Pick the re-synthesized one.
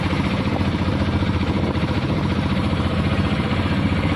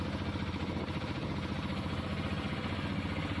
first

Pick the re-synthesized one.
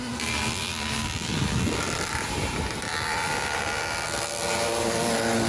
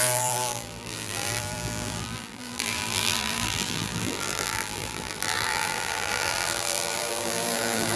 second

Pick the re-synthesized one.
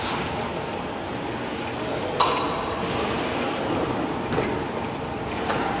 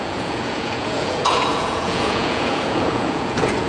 second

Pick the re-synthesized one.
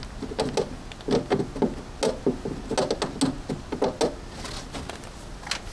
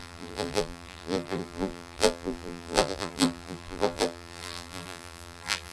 second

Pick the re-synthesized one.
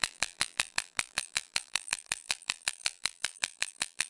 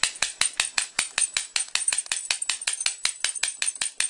first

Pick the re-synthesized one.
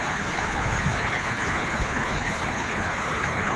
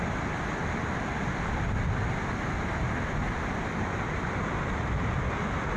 first